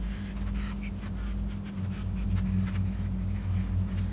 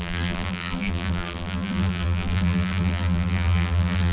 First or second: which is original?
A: first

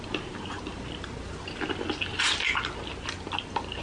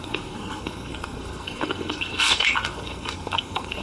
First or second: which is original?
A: first